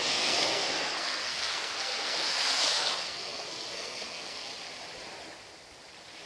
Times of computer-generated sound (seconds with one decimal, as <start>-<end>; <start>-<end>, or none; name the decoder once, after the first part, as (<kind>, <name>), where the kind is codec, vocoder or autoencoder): 0.0-4.5 (codec, SNAC)